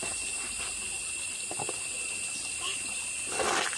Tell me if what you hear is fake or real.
real